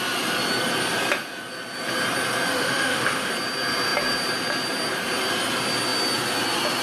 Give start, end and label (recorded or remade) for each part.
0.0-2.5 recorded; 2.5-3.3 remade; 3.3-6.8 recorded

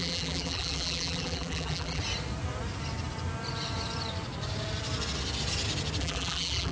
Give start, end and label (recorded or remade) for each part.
0.0-2.0 remade; 2.0-6.0 recorded; 6.0-6.7 remade

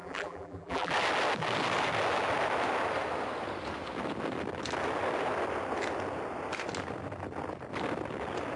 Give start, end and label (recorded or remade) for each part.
0.0-0.9 remade; 0.9-8.6 recorded

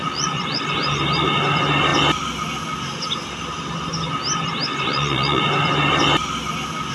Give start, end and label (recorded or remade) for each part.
0.0-0.6 remade; 0.6-4.7 recorded; 4.7-5.4 remade; 5.4-6.9 recorded